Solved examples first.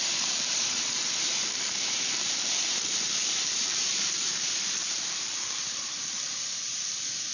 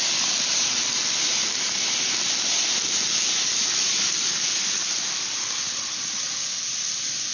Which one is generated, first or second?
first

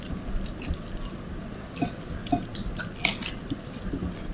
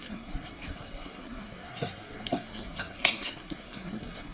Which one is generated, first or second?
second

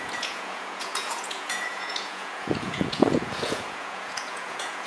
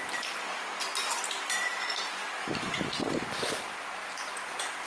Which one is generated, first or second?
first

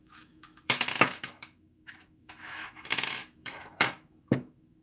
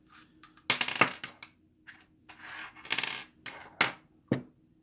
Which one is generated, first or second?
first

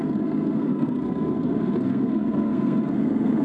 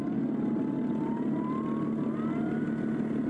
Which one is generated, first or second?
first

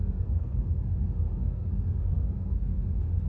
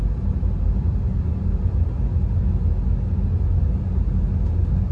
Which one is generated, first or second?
first